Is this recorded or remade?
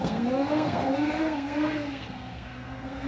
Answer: remade